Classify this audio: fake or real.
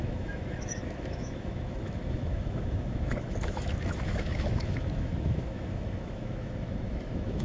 fake